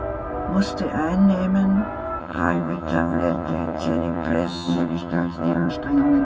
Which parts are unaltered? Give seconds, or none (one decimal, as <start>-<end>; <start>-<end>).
0.0-2.2; 5.7-6.2